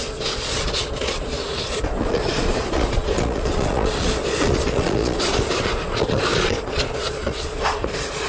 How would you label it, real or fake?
fake